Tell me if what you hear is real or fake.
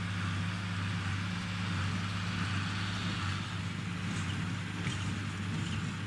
real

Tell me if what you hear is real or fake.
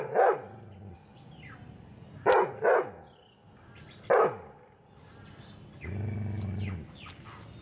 real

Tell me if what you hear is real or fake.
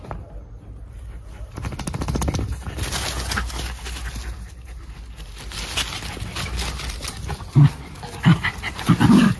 real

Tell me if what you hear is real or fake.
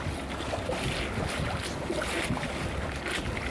real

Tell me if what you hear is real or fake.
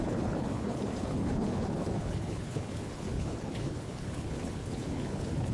fake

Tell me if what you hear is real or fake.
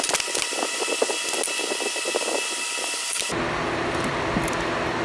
real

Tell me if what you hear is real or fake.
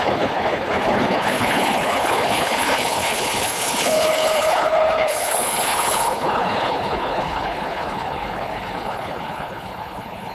fake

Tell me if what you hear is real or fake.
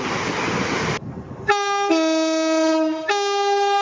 real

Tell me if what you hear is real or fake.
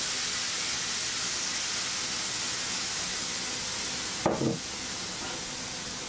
real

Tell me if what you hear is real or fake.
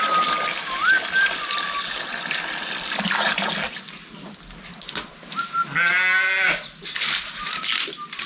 real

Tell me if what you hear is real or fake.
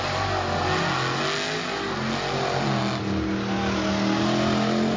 real